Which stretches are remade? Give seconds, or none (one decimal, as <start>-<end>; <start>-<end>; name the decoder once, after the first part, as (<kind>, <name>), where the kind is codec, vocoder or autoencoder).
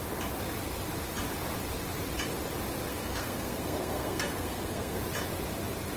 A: 2.9-5.0 (codec, SNAC)